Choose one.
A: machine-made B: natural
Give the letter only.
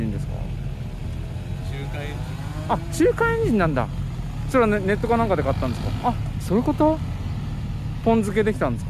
B